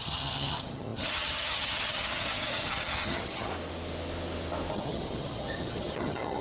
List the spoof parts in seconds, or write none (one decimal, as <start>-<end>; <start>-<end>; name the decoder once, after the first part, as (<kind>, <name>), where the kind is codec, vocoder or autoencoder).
0.0-3.5 (vocoder, HiFi-GAN); 4.7-6.4

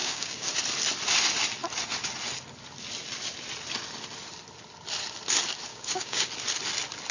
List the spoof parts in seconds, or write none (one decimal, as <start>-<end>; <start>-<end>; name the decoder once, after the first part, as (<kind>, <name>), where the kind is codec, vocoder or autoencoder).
0.0-0.5 (codec, DAC); 5.7-6.3

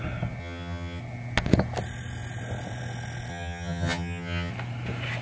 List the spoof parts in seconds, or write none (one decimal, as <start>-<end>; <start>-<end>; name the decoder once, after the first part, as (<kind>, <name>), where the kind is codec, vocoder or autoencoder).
0.4-1.0 (vocoder, HiFi-GAN); 3.3-4.5